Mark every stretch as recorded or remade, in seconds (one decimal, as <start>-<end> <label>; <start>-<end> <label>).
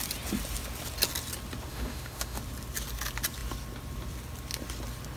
0.0-1.7 recorded; 1.7-2.4 remade; 2.4-5.2 recorded